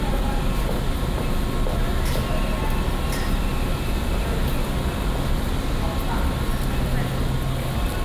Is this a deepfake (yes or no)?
no